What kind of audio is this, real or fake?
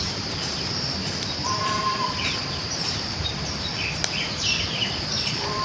fake